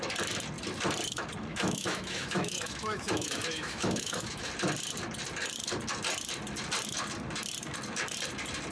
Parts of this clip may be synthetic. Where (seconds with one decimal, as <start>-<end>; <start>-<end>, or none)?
1.5-4.5